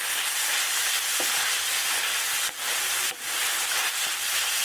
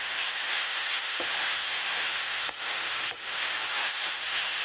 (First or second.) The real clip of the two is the first